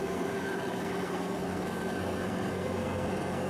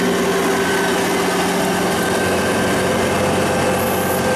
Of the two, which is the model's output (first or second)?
first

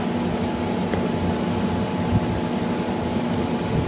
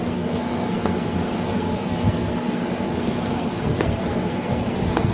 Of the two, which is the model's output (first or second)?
second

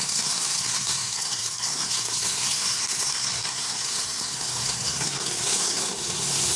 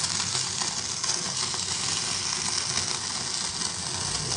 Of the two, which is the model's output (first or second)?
first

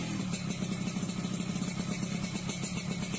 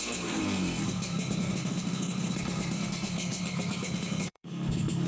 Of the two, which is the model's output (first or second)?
second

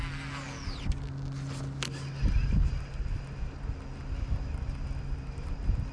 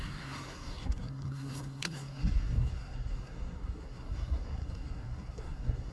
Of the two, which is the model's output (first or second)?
second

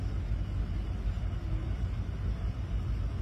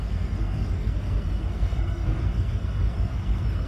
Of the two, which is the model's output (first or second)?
second